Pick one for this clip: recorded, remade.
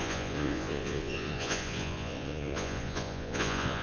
remade